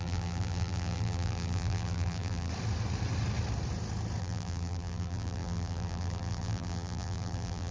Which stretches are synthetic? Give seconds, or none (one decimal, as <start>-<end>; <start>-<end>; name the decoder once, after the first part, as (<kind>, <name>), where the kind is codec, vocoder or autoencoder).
0.0-2.5 (vocoder, BigVGAN v2); 4.2-7.7